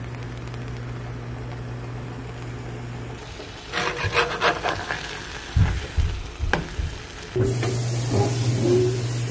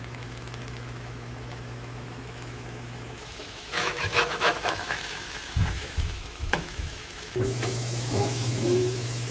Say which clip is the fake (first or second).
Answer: second